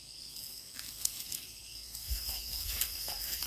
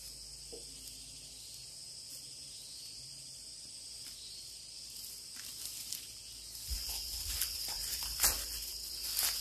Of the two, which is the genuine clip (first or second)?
second